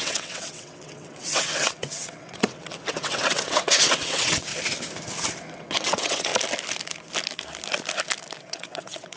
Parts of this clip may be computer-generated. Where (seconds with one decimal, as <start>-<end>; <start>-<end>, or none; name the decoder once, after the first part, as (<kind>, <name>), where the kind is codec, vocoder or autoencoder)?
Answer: 0.0-4.5 (vocoder, WaveNeXt); 5.5-6.3; 8.4-9.2